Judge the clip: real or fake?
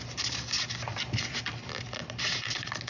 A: real